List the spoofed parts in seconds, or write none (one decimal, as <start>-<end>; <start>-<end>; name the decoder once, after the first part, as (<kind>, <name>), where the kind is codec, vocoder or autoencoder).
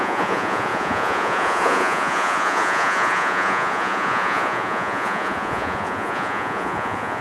0.0-7.2 (vocoder, Vocos)